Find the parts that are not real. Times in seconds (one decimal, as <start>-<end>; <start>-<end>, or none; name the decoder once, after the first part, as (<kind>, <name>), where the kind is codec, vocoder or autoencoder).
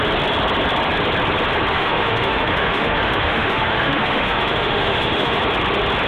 1.7-5.4 (autoencoder, DAC-VAE)